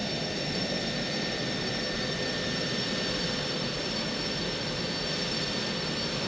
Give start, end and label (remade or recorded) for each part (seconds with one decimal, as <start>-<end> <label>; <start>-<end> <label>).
0.0-6.3 recorded